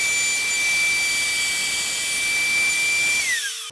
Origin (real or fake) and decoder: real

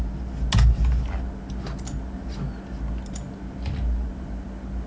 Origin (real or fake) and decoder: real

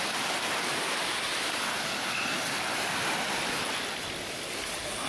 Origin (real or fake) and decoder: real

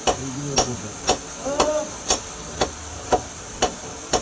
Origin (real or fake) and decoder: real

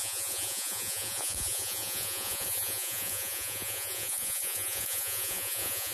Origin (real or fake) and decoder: fake, vocoder, Vocos